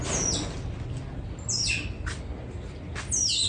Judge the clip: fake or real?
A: real